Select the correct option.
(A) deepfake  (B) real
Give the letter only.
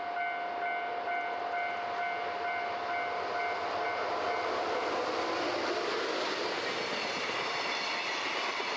B